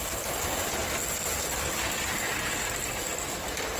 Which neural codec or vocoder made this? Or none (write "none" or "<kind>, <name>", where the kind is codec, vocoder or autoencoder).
none